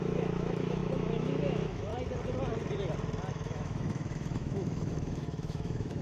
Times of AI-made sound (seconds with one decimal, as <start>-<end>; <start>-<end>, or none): 0.0-1.9; 3.3-6.0